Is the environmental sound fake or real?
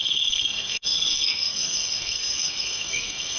fake